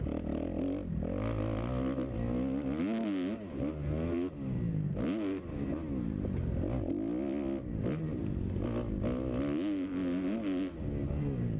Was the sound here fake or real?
real